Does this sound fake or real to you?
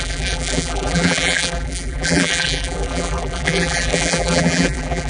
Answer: fake